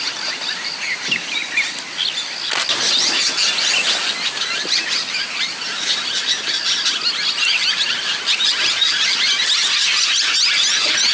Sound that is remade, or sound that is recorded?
recorded